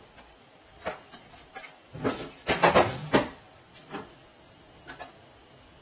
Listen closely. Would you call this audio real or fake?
real